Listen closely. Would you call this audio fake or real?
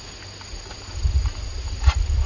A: real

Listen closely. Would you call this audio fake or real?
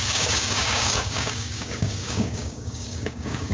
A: fake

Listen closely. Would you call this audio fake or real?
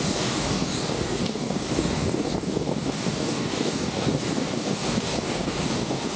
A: fake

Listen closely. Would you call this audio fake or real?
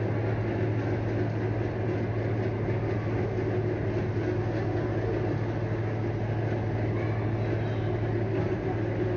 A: real